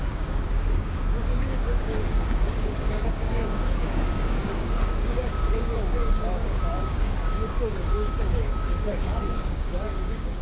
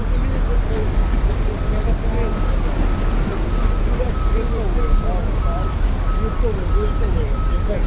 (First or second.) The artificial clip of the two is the first